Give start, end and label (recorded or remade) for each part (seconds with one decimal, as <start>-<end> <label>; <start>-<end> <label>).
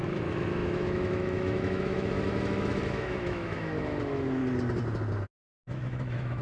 0.0-4.4 remade; 4.4-5.7 recorded; 5.7-6.4 remade